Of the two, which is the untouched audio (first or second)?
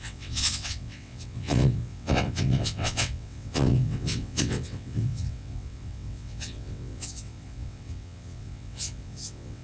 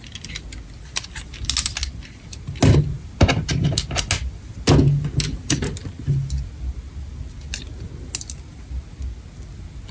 second